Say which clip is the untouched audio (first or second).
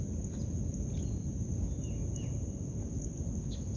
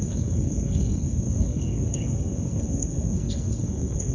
first